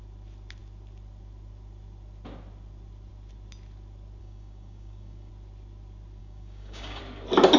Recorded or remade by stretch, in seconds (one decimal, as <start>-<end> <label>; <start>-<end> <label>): 0.0-4.2 recorded; 4.2-5.3 remade; 5.3-6.2 recorded; 6.2-7.0 remade; 7.0-7.6 recorded